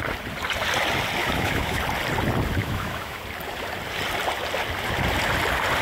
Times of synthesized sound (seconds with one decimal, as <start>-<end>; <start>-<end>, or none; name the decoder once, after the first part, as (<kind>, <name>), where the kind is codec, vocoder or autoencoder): 1.2-1.8 (autoencoder, DAC-VAE); 2.6-3.2